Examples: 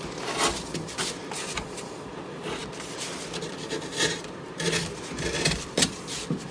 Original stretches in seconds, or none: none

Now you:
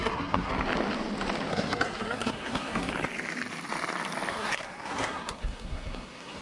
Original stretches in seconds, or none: 0.5-1.5; 2.9-4.3

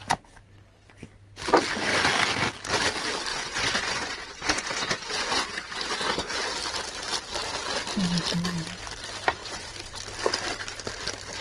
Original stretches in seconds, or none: 0.0-3.3; 6.5-9.4; 10.0-11.4

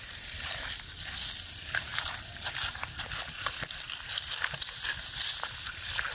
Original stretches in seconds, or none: 0.0-6.1

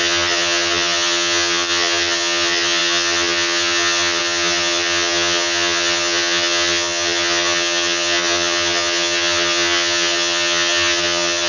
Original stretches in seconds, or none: none